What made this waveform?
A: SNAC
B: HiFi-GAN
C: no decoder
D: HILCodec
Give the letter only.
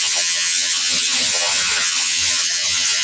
B